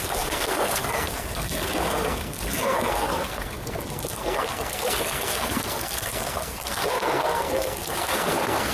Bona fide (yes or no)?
no